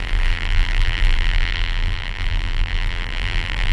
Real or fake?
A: fake